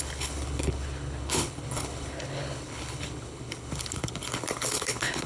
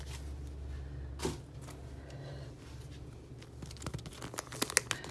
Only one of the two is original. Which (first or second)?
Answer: second